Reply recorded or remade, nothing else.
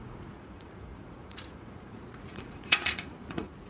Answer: remade